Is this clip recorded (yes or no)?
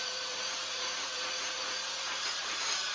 no